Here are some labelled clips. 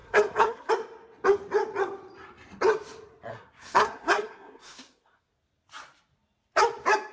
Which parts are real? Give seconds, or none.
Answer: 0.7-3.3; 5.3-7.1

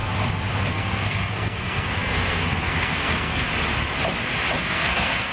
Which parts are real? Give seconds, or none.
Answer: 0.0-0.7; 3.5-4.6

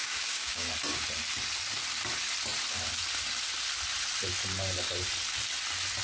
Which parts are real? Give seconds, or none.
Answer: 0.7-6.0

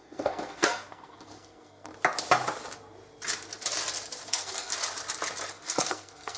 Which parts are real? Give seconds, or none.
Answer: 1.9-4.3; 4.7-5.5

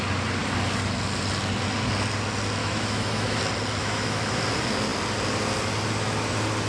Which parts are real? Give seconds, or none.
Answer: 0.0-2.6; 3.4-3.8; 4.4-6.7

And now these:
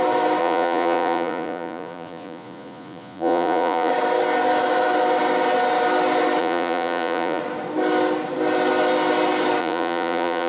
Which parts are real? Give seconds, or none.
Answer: 0.0-0.4; 3.9-6.4; 7.4-9.6